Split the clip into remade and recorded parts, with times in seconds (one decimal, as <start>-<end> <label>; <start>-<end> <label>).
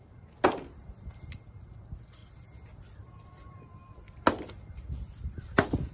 0.0-5.9 recorded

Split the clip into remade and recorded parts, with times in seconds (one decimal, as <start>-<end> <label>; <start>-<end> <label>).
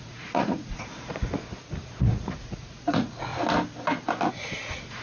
0.0-3.3 remade; 3.3-4.3 recorded; 4.3-5.0 remade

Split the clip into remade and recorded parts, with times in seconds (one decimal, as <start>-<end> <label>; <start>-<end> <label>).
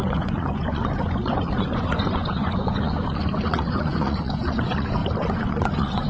0.0-5.0 remade; 5.0-5.5 recorded; 5.5-6.1 remade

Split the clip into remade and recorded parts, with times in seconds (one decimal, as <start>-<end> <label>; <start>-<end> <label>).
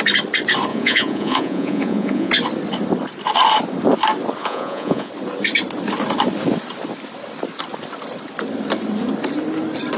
0.0-0.7 recorded; 0.7-2.3 remade; 2.3-4.4 recorded; 4.4-5.1 remade; 5.1-10.0 recorded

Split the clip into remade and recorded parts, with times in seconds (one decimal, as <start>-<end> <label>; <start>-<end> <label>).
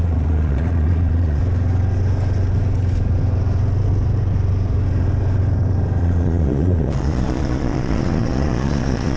0.0-1.4 remade; 1.4-6.0 recorded; 6.0-9.2 remade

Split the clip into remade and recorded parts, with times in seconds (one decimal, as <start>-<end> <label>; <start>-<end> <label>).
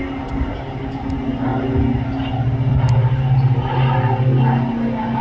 0.0-5.2 recorded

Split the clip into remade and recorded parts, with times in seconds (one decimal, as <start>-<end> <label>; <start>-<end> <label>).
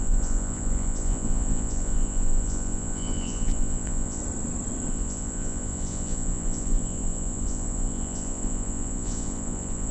0.0-4.2 remade; 4.2-4.9 recorded; 4.9-9.9 remade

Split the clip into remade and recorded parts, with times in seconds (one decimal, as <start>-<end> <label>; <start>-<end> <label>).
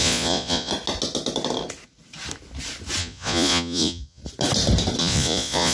0.0-0.7 remade; 0.7-3.0 recorded; 3.0-4.2 remade; 4.2-5.0 recorded; 5.0-5.7 remade